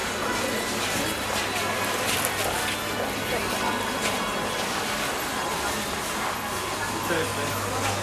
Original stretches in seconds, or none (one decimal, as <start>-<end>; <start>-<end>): 0.0-8.0